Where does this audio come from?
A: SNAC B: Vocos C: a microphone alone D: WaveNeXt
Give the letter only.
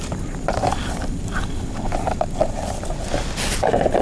C